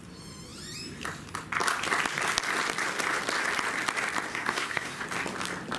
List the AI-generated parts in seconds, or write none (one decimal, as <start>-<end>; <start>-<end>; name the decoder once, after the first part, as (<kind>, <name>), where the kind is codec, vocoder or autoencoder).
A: 4.3-5.0 (codec, SNAC)

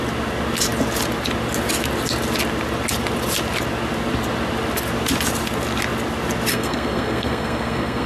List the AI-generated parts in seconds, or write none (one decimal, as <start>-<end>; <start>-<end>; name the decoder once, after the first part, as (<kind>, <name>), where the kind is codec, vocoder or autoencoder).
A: 6.5-8.1 (codec, SNAC)

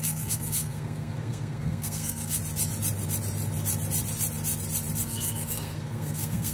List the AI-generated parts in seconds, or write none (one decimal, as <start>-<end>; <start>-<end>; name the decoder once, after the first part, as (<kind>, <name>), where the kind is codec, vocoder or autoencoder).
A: 0.0-2.4 (codec, SNAC); 5.0-6.5